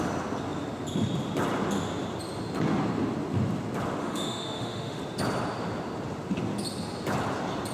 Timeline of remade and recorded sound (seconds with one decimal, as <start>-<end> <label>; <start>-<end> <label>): 0.0-4.0 recorded; 4.0-5.0 remade; 5.0-7.7 recorded